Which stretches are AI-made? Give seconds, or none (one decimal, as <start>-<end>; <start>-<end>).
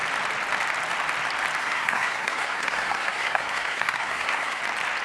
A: 1.6-4.6